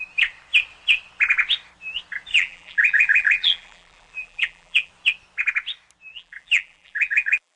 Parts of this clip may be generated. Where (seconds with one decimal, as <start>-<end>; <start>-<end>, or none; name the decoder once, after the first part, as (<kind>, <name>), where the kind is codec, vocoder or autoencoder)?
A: 2.3-4.9 (vocoder, BigVGAN v2); 6.1-7.6

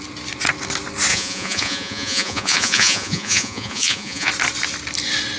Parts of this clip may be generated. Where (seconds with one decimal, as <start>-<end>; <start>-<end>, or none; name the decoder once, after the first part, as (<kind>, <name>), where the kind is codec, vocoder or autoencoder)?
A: 1.1-4.3 (vocoder, Vocos)

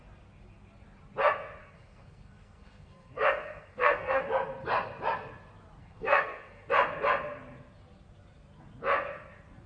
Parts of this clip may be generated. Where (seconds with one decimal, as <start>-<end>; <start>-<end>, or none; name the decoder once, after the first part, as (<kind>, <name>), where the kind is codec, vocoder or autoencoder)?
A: 1.6-4.2 (codec, SNAC); 5.8-6.7

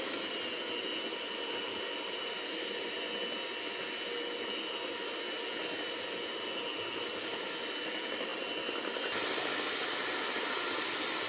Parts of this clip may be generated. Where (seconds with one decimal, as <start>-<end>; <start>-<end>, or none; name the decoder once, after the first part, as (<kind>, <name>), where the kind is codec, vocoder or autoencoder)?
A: none